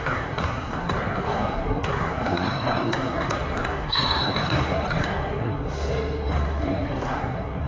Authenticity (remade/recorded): remade